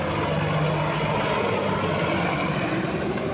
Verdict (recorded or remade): recorded